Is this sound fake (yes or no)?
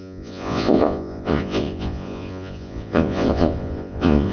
yes